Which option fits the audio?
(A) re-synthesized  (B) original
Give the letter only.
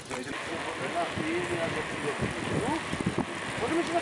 B